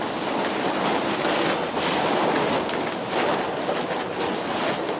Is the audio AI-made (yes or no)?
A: no